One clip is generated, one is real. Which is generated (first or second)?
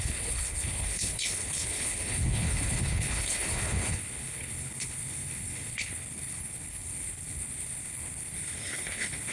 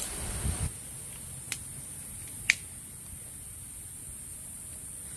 first